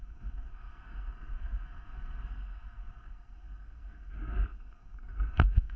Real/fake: fake